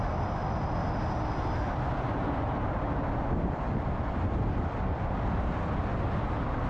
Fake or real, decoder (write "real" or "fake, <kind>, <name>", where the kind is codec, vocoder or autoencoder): real